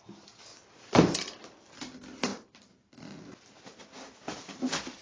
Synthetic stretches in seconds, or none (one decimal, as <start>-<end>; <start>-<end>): none